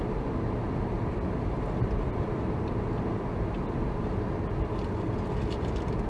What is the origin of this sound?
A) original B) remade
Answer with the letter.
A